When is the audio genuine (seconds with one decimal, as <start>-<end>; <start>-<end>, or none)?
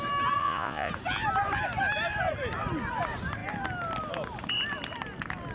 0.0-0.4; 0.9-5.5